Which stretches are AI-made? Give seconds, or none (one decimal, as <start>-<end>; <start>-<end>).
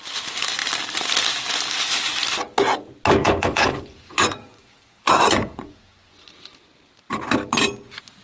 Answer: 3.2-6.3